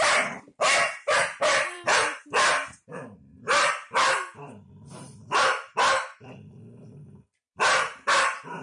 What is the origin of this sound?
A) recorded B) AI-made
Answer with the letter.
B